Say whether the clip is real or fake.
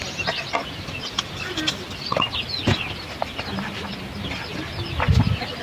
real